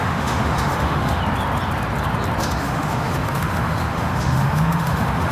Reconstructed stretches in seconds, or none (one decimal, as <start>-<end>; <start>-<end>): 0.0-1.2; 2.4-5.3